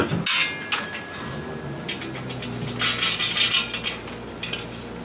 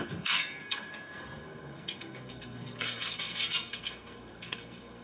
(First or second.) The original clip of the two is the first